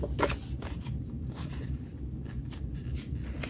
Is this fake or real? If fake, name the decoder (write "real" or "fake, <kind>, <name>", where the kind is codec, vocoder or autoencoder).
real